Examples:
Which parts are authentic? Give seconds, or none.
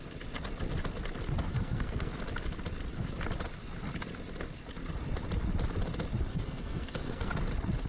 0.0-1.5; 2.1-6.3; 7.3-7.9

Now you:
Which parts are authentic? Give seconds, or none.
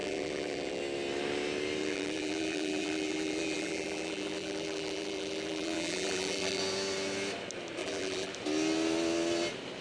0.8-1.8; 6.6-7.8; 8.3-9.8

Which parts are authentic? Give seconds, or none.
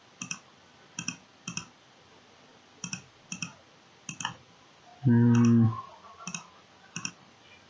4.9-7.1